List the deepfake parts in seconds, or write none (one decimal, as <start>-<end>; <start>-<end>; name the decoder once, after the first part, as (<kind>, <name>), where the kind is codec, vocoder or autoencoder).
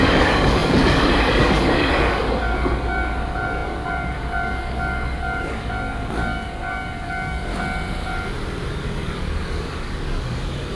0.0-7.5 (codec, DAC); 8.7-10.7